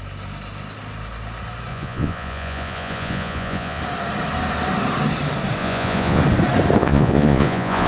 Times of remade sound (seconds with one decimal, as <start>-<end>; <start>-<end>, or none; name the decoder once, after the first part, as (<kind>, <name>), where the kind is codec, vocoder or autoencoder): 1.7-3.8 (vocoder, Vocos); 5.6-6.2; 6.8-7.9